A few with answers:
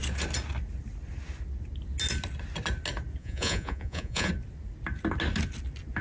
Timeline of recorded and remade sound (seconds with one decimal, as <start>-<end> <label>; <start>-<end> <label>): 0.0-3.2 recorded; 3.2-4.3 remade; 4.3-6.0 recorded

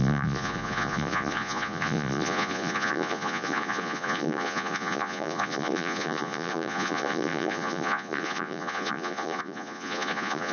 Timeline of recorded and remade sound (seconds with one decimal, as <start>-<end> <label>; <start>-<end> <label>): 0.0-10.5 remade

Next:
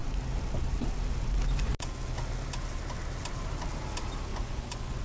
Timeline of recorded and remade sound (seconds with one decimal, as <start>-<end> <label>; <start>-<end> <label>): 0.0-4.3 recorded; 4.3-5.0 remade

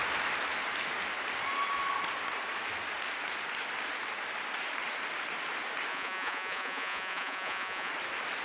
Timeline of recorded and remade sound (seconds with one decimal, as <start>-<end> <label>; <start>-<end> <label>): 0.0-5.9 recorded; 5.9-7.9 remade; 7.9-8.4 recorded